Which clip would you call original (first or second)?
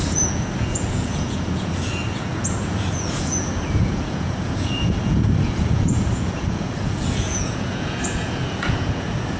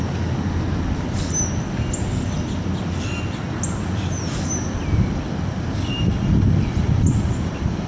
second